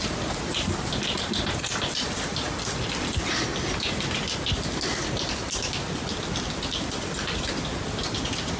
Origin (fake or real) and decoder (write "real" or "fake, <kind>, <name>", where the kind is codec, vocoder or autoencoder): real